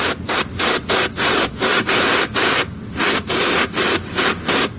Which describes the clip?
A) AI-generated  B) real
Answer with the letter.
B